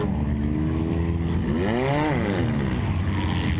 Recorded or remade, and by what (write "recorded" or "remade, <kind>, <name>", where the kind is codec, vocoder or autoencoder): recorded